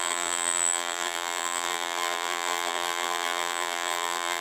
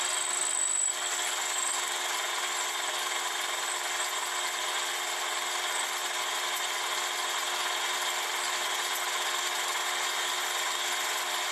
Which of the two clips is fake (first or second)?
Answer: first